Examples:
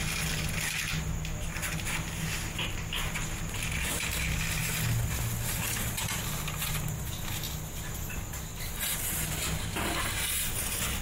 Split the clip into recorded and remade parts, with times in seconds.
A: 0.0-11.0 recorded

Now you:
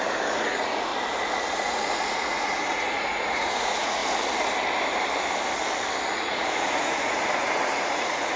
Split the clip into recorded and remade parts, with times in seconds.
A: 0.0-0.9 remade; 0.9-1.5 recorded; 1.5-4.0 remade; 4.0-6.1 recorded; 6.1-8.4 remade

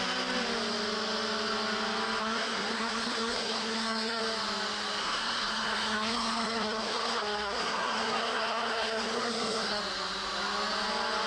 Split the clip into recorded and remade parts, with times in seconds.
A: 0.0-2.2 recorded; 2.2-4.2 remade; 4.2-5.0 recorded; 5.0-9.8 remade; 9.8-11.3 recorded

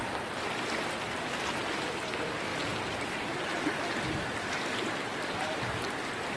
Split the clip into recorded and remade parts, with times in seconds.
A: 0.0-5.1 recorded; 5.1-5.8 remade; 5.8-6.4 recorded

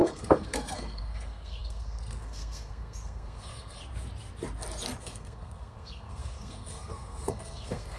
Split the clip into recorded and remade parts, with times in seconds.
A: 0.0-3.8 remade; 3.8-5.0 recorded; 5.0-8.0 remade